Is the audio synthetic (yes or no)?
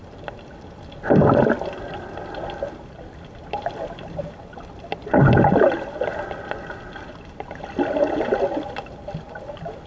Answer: no